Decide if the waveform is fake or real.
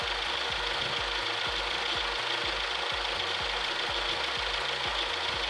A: real